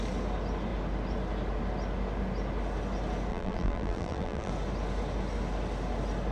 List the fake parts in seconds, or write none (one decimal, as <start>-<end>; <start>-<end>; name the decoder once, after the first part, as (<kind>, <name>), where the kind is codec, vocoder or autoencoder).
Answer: 3.3-4.5 (vocoder, BigVGAN v2)